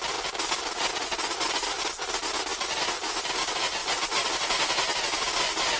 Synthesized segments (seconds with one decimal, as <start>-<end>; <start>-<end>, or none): 3.8-5.8